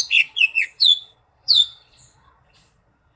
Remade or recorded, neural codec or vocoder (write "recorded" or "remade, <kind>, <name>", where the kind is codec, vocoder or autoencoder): remade, vocoder, Vocos